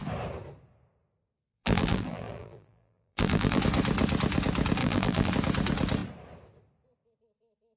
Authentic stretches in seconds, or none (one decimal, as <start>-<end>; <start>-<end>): 0.0-1.5; 3.6-4.8; 5.3-7.8